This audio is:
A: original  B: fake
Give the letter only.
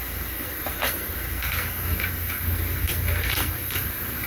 B